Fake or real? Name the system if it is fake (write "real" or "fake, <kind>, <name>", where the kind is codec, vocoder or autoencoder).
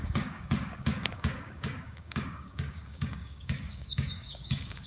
fake, codec, DAC